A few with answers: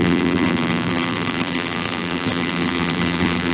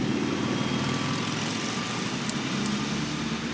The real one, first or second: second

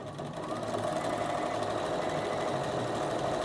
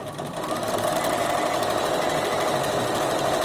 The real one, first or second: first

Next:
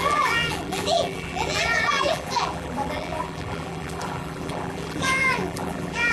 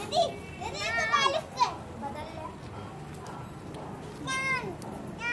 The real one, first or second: second